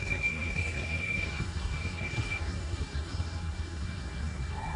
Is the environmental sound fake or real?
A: fake